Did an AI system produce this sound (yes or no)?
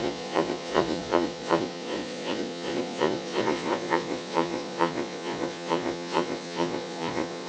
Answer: yes